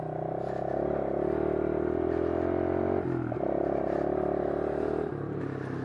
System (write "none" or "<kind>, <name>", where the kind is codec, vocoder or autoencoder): none